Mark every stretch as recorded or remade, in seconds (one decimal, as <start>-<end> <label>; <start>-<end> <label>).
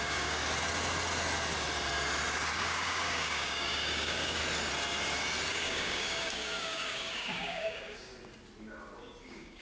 0.0-0.4 remade; 0.4-2.6 recorded; 2.6-4.4 remade; 4.4-5.5 recorded; 5.5-8.1 remade; 8.1-9.2 recorded; 9.2-9.6 remade